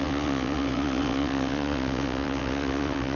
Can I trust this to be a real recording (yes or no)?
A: no